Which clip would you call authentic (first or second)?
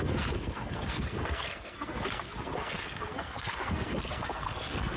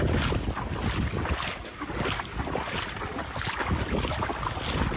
second